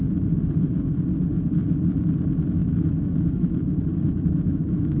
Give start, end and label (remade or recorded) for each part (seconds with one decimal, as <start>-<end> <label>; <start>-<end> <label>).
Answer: 0.0-2.6 recorded; 2.6-5.0 remade